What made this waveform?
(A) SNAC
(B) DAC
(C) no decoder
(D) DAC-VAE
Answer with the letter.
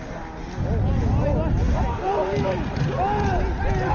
C